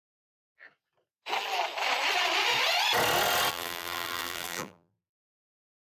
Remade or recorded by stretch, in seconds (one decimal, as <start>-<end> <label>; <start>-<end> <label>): 0.0-3.5 recorded; 3.5-5.9 remade